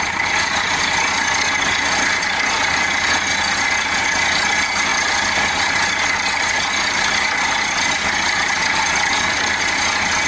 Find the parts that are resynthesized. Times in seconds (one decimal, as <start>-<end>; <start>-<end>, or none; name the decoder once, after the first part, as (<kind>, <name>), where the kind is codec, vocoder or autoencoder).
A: 4.9-9.6 (vocoder, BigVGAN v2)